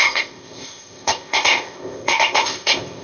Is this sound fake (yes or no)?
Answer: yes